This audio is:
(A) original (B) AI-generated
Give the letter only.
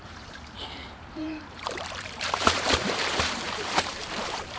B